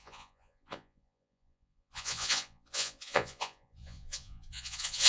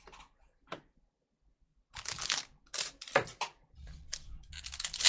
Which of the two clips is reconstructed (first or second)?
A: first